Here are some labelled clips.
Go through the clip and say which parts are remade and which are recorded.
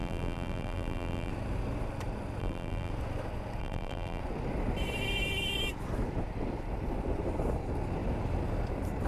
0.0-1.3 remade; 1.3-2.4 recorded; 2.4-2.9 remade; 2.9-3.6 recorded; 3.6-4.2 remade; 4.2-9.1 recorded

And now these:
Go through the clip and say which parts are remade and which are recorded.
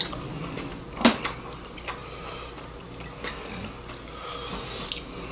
0.0-0.7 recorded; 0.7-1.2 remade; 1.2-5.3 recorded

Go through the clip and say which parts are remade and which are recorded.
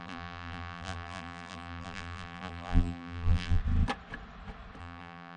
0.0-3.6 remade; 3.6-4.8 recorded; 4.8-5.4 remade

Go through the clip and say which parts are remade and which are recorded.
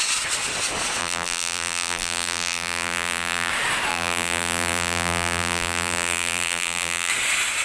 0.0-1.0 recorded; 1.0-3.5 remade; 3.5-3.9 recorded; 3.9-7.1 remade; 7.1-7.6 recorded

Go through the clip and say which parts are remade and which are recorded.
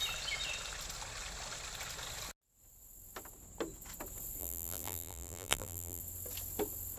0.0-4.4 recorded; 4.4-6.0 remade; 6.0-7.0 recorded